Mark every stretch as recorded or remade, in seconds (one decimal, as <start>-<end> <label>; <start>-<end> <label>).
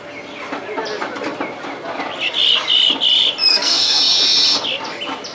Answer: 0.0-3.5 recorded; 3.5-4.0 remade; 4.0-5.3 recorded